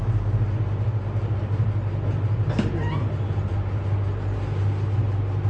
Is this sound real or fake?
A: real